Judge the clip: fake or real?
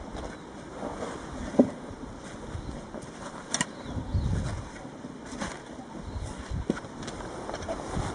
real